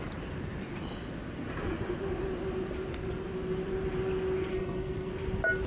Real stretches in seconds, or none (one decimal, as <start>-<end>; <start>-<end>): 0.0-4.5; 5.1-5.7